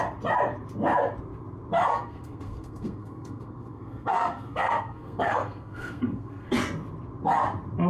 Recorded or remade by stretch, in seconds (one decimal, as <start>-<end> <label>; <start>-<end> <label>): 0.0-1.9 recorded; 1.9-6.5 remade; 6.5-7.9 recorded